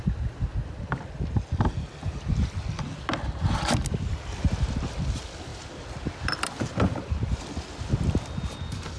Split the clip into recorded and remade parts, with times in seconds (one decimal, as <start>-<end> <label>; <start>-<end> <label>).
0.0-0.5 recorded; 0.5-1.3 remade; 1.3-2.0 recorded; 2.0-3.6 remade; 3.6-5.5 recorded; 5.5-9.0 remade